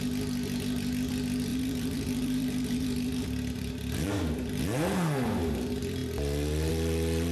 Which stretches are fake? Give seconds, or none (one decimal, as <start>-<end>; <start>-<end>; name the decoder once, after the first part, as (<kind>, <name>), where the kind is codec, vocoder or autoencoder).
1.5-3.7 (vocoder, BigVGAN v2)